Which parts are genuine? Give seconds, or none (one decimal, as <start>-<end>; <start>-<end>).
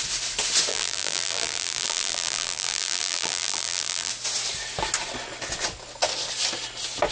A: 0.0-0.7; 4.1-7.1